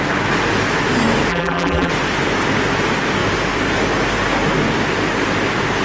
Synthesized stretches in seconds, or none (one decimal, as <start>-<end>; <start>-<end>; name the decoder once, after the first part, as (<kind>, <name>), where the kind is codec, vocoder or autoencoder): 1.3-1.9 (vocoder, BigVGAN v2)